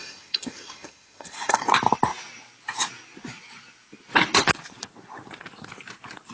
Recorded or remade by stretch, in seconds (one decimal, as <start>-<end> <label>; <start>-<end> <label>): 0.0-1.7 remade; 1.7-6.3 recorded